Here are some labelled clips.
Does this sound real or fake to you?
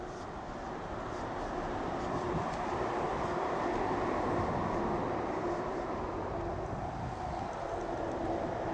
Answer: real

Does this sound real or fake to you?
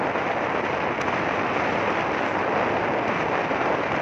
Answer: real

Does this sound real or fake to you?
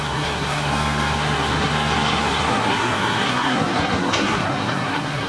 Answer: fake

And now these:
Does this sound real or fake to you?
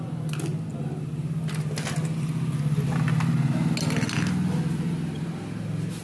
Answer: real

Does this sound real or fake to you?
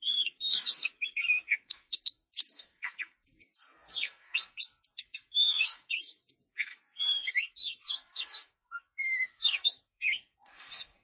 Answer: fake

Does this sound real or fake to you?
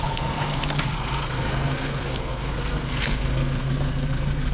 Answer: fake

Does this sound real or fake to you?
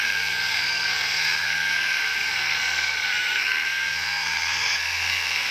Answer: fake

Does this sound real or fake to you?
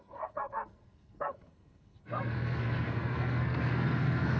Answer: fake